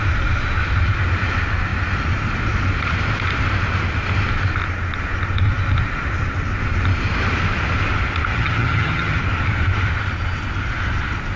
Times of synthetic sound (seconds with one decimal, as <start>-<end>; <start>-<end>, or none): 8.3-9.2

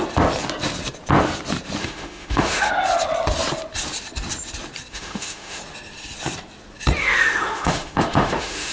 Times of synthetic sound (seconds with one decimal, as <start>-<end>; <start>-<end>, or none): 1.8-2.7; 4.9-5.6; 7.0-8.7